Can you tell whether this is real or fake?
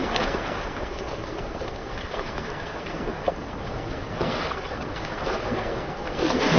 fake